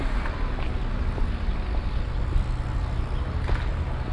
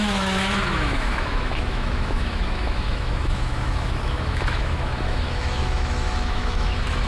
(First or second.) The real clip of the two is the first